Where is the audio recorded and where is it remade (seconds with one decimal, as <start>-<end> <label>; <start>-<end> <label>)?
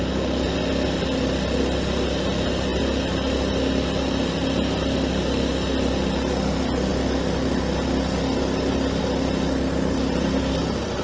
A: 0.0-11.0 recorded